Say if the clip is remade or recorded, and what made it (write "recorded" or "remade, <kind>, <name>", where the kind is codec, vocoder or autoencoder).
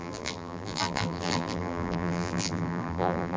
remade, vocoder, BigVGAN v2